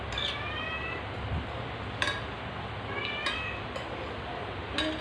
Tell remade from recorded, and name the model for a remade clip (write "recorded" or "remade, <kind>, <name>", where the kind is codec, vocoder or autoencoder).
recorded